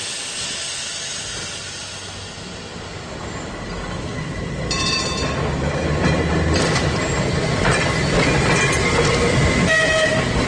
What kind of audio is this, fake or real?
real